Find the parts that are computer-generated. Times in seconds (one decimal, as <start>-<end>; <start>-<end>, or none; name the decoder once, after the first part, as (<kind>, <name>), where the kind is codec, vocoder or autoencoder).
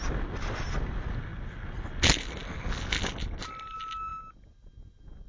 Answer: none